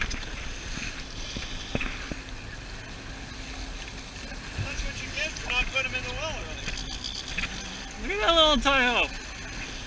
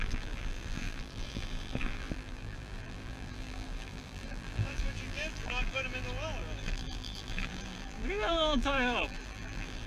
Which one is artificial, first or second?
second